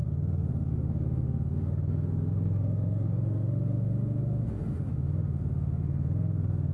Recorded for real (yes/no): no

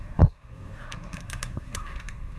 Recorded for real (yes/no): no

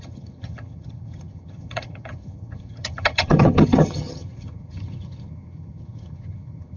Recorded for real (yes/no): no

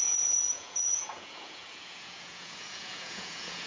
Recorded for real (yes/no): no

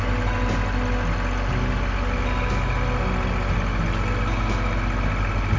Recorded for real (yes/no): yes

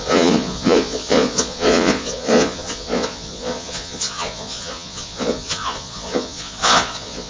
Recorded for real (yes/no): no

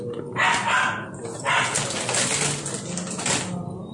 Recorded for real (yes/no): yes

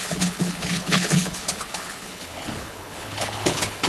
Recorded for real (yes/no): no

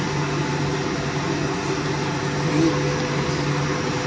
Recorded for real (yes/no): yes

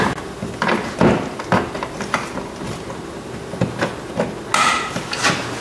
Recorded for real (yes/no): yes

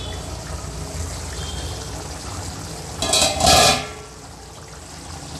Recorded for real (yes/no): yes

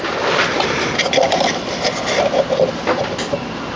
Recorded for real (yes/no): yes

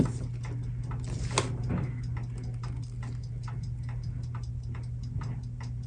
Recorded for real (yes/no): yes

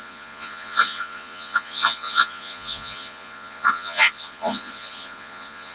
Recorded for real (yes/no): no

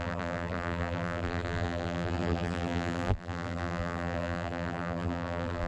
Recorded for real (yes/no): no